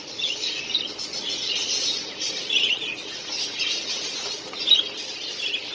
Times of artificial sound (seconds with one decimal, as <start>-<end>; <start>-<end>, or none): 0.0-0.6; 1.2-4.6